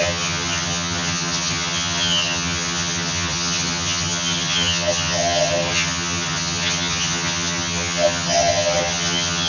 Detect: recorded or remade remade